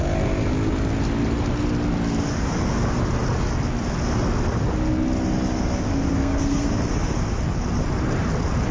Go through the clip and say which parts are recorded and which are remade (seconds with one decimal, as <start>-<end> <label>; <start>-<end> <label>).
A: 0.0-6.2 recorded; 6.2-6.7 remade; 6.7-8.7 recorded